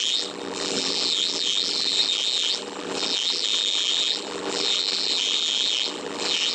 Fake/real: fake